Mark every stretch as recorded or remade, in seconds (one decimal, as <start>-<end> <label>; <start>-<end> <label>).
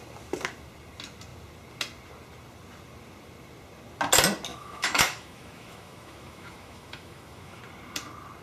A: 0.0-4.5 recorded; 4.5-7.6 remade; 7.6-8.4 recorded